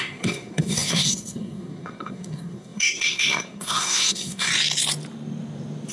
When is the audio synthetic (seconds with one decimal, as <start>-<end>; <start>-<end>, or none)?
0.0-4.5